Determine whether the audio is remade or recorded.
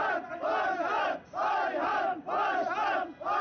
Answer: recorded